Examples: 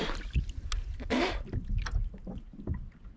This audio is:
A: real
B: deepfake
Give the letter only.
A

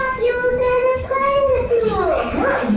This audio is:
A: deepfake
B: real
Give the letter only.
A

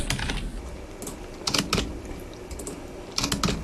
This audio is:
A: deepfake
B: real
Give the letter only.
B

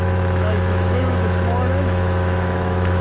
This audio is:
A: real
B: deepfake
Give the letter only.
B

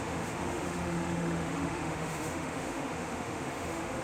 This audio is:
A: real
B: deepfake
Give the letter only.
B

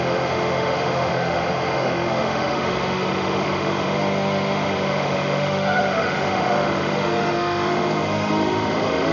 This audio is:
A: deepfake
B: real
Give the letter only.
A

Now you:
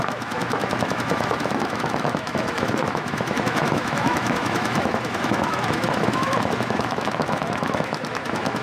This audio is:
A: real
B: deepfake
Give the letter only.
B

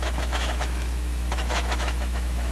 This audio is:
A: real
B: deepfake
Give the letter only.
B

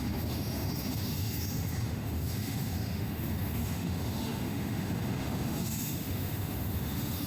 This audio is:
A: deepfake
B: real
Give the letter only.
A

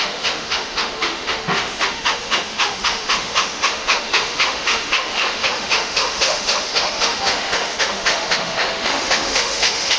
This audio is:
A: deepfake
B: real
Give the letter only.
A